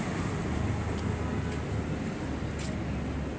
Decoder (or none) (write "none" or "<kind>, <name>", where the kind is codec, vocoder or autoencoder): none